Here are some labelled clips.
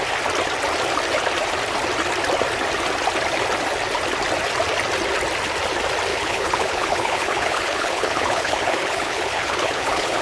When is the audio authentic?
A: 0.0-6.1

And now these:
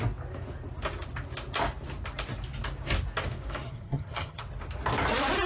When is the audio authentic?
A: 0.0-3.6; 4.4-5.5

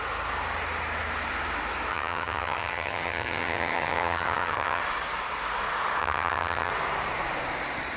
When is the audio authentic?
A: 0.0-1.9; 4.8-6.0; 6.7-8.0

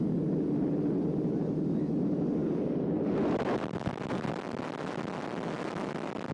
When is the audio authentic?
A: 0.0-6.3

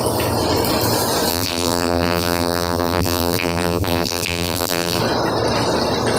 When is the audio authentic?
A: 0.0-1.3; 5.0-6.2

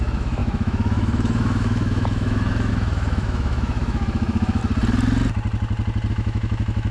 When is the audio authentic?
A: 4.6-6.1